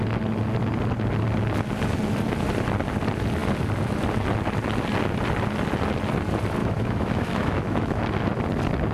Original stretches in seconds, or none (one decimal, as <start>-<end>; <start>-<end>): 0.0-6.6; 8.0-8.9